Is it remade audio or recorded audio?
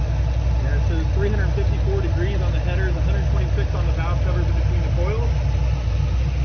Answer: recorded